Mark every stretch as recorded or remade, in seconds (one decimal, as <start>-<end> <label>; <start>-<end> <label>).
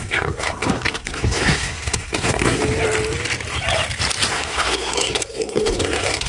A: 0.0-2.6 remade; 2.6-4.3 recorded; 4.3-6.3 remade